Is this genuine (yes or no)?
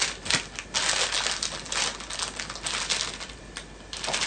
yes